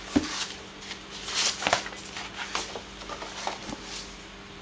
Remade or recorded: recorded